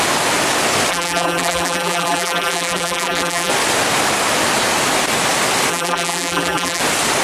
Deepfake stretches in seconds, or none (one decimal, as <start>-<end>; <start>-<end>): 0.9-3.5; 5.7-6.8